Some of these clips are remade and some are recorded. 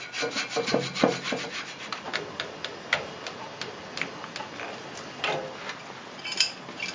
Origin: recorded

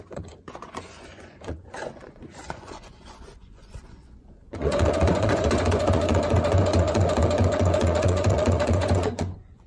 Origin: remade